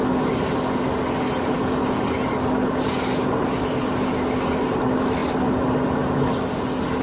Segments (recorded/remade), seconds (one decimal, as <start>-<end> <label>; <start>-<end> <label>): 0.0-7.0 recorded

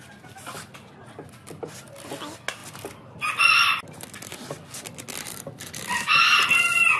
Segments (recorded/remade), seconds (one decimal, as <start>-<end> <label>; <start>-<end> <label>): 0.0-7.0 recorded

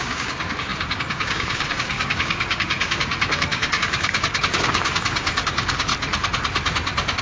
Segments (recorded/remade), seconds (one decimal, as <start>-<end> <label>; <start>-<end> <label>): 0.0-5.9 remade; 5.9-7.2 recorded

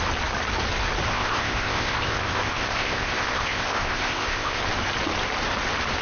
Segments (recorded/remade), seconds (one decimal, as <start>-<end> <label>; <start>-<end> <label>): 0.0-1.1 recorded; 1.1-4.6 remade; 4.6-6.0 recorded

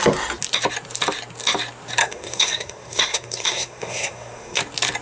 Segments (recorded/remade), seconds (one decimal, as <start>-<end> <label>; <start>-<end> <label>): 0.0-2.0 recorded; 2.0-4.6 remade; 4.6-5.0 recorded